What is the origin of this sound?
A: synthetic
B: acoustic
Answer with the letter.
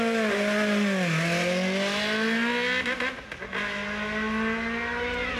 B